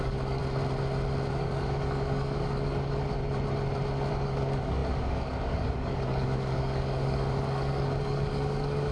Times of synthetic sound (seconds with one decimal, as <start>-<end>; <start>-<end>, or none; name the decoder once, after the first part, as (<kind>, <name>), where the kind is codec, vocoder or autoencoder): 0.0-0.4 (codec, DAC); 1.3-3.2; 4.1-8.9